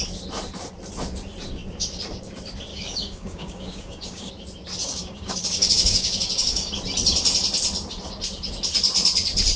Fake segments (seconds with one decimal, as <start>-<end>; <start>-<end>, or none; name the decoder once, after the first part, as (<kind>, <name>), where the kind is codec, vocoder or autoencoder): 2.7-4.3 (codec, DAC); 4.8-6.7